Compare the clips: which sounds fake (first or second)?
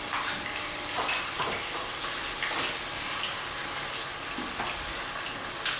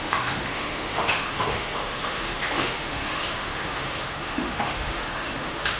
second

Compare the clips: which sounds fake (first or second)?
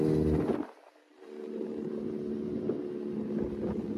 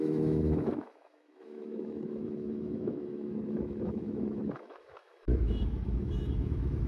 second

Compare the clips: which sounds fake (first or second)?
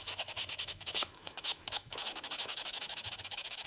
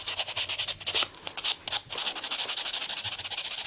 first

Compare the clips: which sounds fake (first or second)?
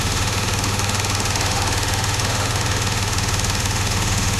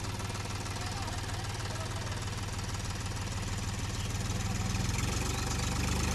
first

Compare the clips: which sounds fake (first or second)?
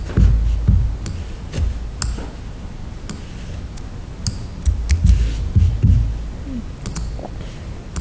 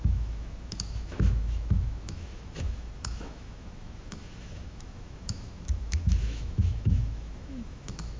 second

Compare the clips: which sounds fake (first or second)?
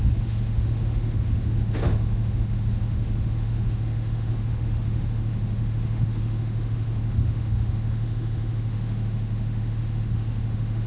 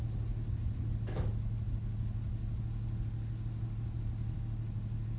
first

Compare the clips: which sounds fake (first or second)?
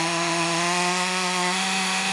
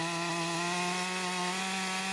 first